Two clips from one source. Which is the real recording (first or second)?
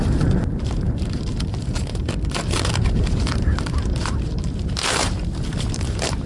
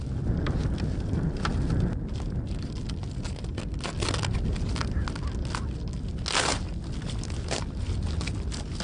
second